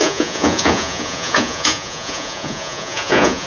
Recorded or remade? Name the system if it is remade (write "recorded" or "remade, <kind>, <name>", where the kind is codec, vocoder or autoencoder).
remade, vocoder, Vocos